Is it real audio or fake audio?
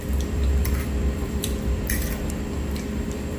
fake